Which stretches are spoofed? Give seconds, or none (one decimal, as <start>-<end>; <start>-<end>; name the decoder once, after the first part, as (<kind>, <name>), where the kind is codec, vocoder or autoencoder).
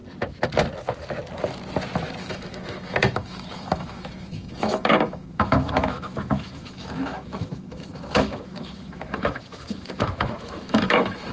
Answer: 2.2-11.3 (autoencoder, DAC-VAE)